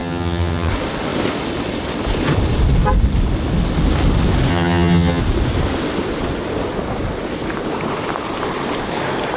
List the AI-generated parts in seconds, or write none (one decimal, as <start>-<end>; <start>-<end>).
0.0-0.7; 4.5-5.2